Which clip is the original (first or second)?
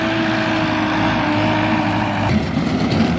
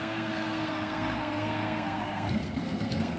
first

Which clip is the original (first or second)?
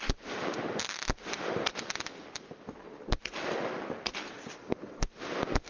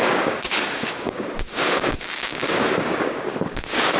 first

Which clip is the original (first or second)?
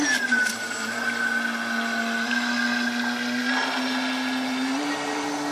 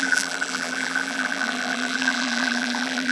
first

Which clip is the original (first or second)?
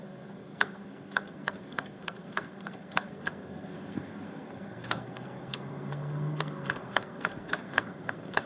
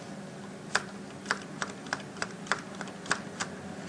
second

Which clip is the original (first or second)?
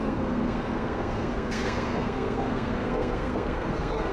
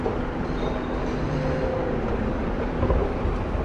second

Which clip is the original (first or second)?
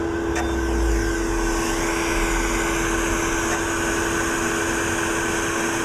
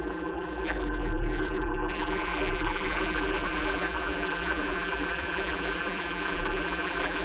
first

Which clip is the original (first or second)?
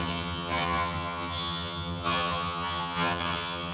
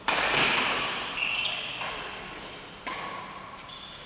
second